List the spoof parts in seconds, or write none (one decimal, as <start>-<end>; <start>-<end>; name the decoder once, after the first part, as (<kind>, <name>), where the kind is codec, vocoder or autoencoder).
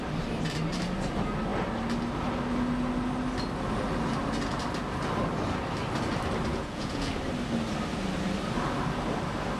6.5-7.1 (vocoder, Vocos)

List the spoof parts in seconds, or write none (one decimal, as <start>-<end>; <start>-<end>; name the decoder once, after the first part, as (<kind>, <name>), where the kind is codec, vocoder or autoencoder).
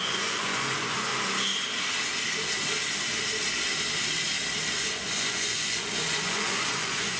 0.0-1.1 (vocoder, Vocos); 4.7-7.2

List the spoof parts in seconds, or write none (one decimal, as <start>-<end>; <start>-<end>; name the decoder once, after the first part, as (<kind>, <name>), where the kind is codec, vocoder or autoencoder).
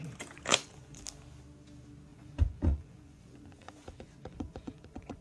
0.5-1.0 (vocoder, Vocos); 2.1-5.2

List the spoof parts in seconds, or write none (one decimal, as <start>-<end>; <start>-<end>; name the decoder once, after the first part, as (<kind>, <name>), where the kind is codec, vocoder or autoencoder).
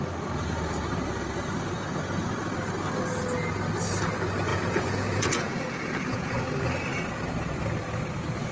4.5-6.3 (vocoder, Vocos)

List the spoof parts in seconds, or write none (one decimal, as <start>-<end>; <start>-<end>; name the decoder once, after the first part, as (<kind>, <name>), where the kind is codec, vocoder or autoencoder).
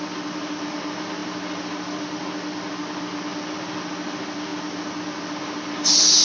none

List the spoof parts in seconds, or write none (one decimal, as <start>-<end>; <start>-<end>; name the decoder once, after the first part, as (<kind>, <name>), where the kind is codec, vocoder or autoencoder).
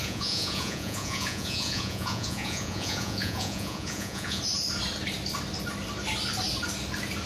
0.0-4.4 (vocoder, Vocos)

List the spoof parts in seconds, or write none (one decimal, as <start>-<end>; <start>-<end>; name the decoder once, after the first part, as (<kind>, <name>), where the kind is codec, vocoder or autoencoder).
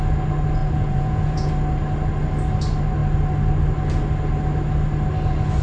0.6-1.5 (vocoder, Vocos)